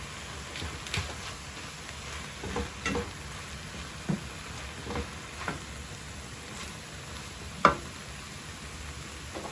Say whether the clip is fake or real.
real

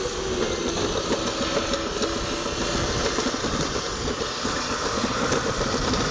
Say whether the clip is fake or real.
real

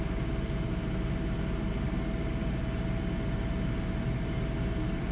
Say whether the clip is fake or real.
real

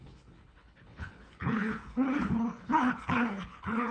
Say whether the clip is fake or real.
fake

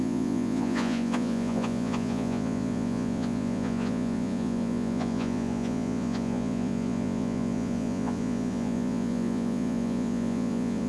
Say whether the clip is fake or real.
fake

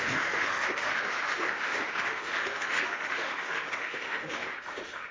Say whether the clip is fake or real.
fake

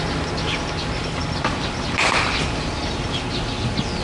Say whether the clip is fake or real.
real